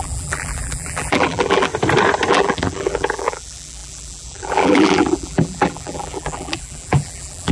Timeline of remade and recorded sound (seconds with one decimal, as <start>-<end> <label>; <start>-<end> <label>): 0.0-1.7 remade; 1.7-2.3 recorded; 2.3-7.5 remade